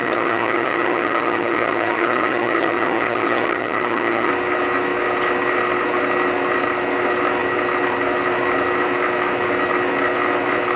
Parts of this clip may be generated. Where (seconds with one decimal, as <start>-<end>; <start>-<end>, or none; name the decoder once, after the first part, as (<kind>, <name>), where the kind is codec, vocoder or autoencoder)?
0.0-4.3 (vocoder, HiFi-GAN)